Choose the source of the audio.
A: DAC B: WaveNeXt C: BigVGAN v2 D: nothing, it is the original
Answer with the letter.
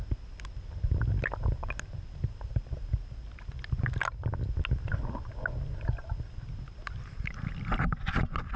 D